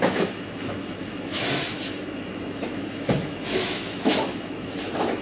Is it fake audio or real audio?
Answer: fake